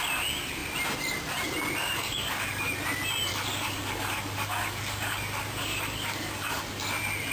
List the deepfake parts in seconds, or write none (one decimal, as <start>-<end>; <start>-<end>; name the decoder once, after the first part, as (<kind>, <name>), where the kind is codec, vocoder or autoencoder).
1.8-2.7 (codec, DAC); 3.3-6.6

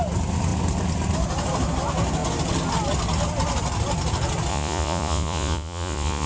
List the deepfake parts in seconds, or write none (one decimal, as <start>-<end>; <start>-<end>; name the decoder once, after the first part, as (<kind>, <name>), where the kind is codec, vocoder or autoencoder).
4.5-6.3 (vocoder, Vocos)

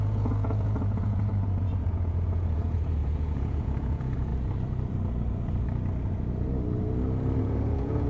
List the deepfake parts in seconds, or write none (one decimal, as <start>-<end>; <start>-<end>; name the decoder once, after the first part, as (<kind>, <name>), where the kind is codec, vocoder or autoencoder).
0.0-4.3 (vocoder, Vocos); 7.4-8.1

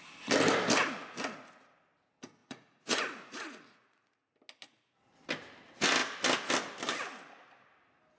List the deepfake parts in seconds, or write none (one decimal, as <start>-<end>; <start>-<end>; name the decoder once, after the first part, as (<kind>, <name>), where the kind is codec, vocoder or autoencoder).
2.4-4.3 (vocoder, Vocos)

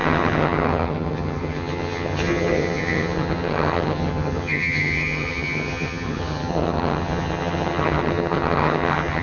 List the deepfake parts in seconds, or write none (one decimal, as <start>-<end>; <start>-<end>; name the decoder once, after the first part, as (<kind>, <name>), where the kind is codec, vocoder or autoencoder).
0.0-9.2 (vocoder, HiFi-GAN)

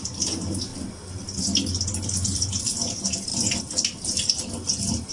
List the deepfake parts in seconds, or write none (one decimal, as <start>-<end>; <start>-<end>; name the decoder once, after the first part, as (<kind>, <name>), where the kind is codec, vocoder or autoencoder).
0.0-0.7 (vocoder, BigVGAN v2); 2.0-3.3